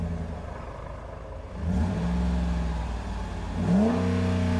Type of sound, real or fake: real